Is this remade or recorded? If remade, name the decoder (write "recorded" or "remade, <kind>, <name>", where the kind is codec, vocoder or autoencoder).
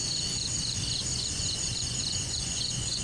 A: remade, vocoder, Vocos